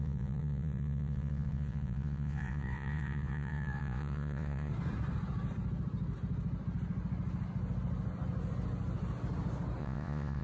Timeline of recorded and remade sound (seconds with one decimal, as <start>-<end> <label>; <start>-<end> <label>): 0.0-4.7 remade; 4.7-9.8 recorded; 9.8-10.4 remade